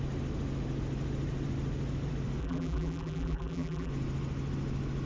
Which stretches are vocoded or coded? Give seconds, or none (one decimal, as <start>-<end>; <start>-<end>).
2.4-3.9